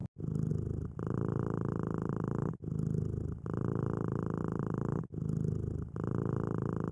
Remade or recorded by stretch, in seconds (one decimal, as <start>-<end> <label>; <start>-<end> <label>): 0.0-6.9 recorded